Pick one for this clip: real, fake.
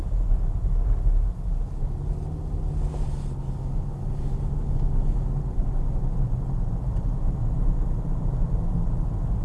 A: real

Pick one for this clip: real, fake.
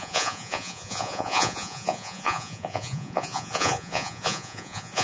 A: fake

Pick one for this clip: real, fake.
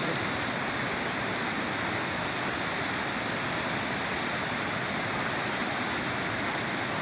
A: real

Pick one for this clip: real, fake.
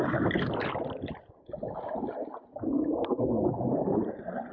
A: real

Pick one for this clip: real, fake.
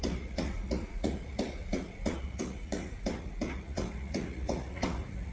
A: fake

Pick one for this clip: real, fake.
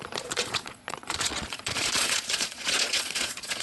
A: fake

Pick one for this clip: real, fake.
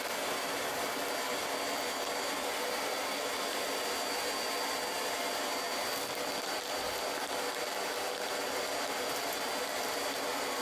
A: real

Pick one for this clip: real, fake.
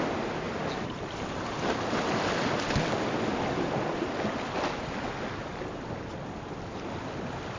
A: real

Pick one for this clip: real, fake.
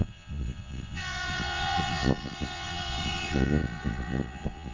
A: fake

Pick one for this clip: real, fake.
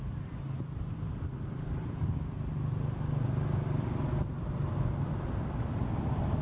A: real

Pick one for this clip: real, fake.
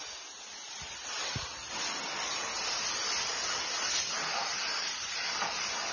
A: real